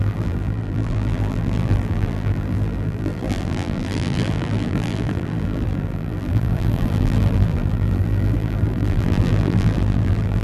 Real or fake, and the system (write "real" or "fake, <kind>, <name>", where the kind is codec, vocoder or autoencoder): fake, vocoder, BigVGAN v2